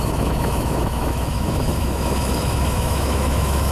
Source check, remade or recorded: remade